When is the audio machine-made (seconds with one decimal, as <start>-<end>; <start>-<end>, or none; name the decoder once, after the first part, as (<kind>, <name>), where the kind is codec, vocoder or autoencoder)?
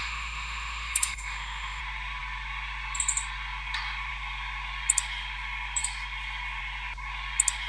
0.0-1.8 (autoencoder, DAC-VAE)